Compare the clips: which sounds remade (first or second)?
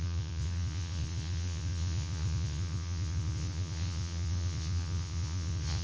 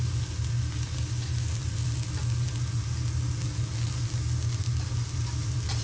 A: first